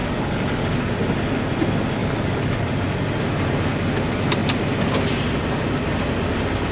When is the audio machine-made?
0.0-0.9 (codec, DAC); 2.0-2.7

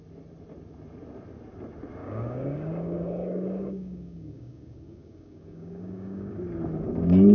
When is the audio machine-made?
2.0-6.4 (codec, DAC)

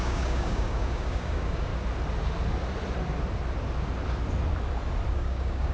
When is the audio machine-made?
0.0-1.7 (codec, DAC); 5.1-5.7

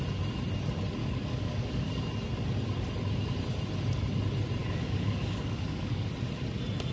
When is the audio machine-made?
1.0-2.0 (codec, DAC); 4.6-6.1

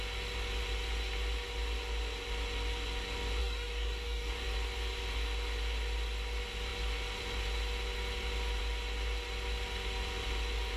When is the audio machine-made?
3.4-4.3 (codec, DAC)

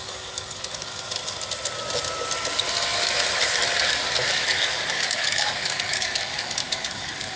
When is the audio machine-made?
0.0-1.2 (codec, DAC); 4.3-7.4

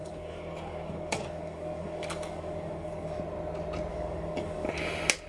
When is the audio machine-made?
0.0-3.2 (codec, DAC); 3.9-4.7